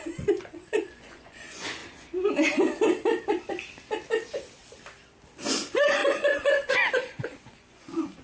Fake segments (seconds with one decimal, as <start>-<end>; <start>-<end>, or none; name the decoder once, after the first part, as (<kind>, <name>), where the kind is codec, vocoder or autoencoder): 0.0-1.8 (vocoder, Vocos); 5.5-8.2